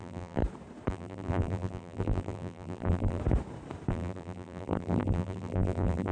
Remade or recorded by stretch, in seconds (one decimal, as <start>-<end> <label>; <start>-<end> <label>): 0.0-0.4 remade; 0.4-0.9 recorded; 0.9-3.2 remade; 3.2-3.9 recorded; 3.9-6.1 remade